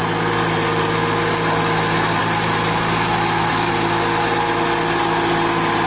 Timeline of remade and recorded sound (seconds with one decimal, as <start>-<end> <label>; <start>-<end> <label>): 0.0-5.9 recorded